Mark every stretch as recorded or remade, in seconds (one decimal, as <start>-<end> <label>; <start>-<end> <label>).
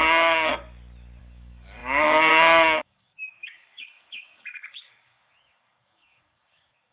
0.0-0.5 remade; 0.5-1.2 recorded; 1.2-6.9 remade